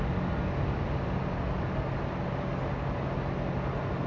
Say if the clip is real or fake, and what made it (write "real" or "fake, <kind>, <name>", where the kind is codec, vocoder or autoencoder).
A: real